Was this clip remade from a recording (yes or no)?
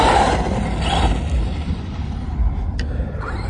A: no